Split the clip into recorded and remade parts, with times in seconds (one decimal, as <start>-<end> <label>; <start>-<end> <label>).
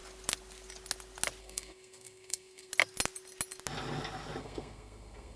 0.0-1.4 recorded; 1.4-2.7 remade; 2.7-4.4 recorded; 4.4-5.4 remade